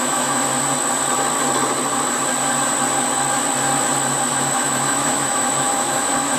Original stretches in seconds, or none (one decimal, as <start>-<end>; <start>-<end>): 0.5-4.3